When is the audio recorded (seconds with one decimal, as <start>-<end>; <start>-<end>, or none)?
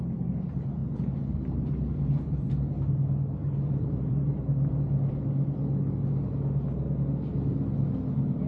0.0-0.8; 2.5-3.4; 4.4-8.5